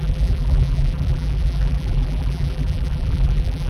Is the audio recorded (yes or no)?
no